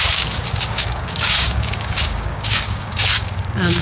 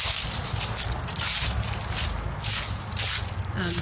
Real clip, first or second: second